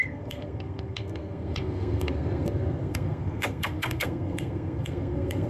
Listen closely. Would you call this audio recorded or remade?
remade